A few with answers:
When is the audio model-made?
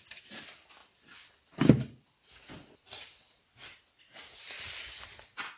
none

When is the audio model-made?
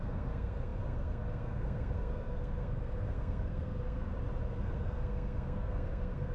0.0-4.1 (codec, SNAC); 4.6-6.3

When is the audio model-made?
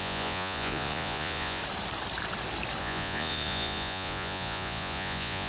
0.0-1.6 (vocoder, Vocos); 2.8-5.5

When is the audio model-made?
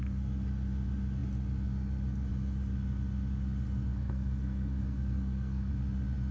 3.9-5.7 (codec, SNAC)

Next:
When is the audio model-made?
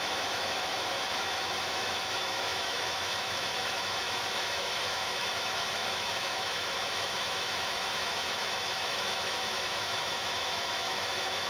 0.0-11.5 (autoencoder, DAC-VAE)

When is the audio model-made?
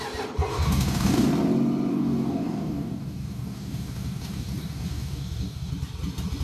0.5-1.3 (codec, DAC); 1.9-5.7